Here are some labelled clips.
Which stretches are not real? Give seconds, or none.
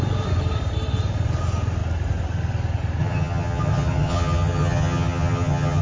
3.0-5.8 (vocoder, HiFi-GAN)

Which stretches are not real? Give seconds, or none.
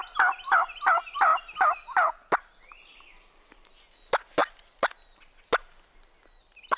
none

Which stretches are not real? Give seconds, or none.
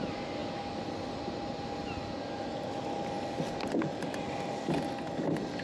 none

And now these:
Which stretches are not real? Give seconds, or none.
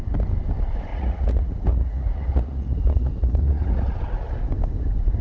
0.9-4.0 (vocoder, Vocos)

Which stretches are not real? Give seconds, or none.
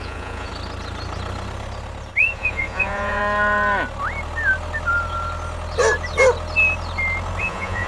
0.0-0.5 (vocoder, Vocos); 2.2-3.2; 7.4-7.9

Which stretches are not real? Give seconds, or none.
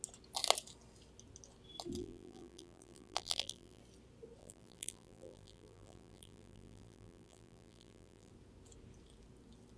2.0-3.8 (vocoder, BigVGAN v2); 4.4-8.3